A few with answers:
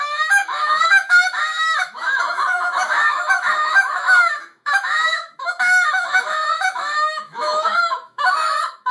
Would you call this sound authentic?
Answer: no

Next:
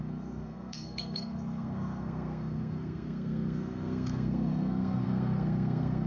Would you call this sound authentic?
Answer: no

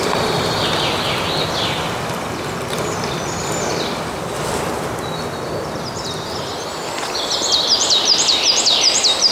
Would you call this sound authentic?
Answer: yes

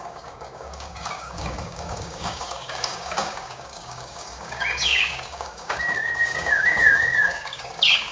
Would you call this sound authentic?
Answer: no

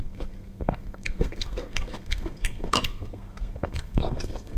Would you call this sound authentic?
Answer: no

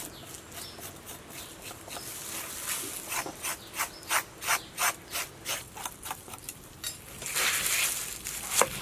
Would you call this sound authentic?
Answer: yes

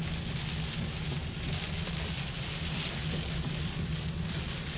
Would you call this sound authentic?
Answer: yes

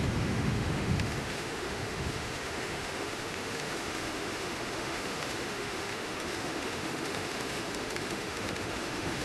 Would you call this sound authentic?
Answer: no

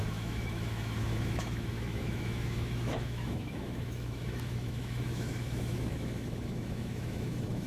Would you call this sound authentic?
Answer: no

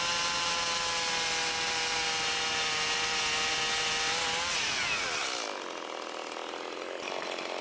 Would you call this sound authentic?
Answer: yes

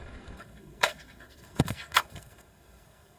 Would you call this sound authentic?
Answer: no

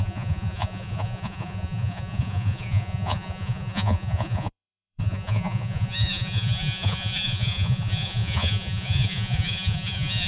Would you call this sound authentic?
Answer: no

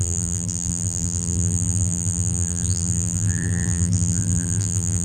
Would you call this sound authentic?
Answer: no